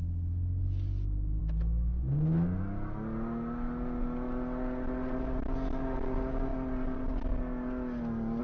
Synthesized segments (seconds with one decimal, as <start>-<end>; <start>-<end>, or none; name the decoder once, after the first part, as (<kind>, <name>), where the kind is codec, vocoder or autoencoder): none